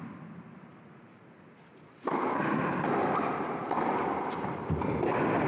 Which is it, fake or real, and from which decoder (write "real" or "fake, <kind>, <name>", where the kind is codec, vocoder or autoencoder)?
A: real